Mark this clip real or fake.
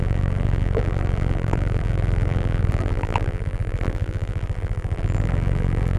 fake